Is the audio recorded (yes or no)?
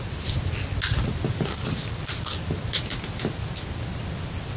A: yes